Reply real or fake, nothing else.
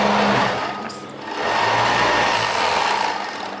real